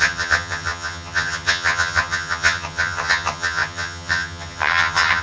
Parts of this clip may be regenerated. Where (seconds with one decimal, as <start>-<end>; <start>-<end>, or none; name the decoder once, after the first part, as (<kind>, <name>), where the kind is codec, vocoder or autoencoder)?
0.0-5.2 (vocoder, HiFi-GAN)